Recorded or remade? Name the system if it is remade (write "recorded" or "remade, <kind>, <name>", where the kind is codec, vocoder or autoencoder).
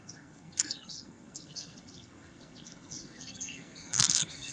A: remade, codec, SNAC